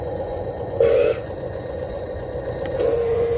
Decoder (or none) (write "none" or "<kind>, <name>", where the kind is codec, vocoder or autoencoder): vocoder, Vocos